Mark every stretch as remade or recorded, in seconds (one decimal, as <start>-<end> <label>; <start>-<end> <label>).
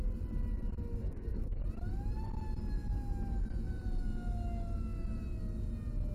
0.0-1.0 recorded; 1.0-1.6 remade; 1.6-6.1 recorded